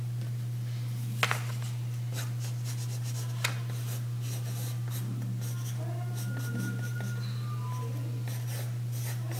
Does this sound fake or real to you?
real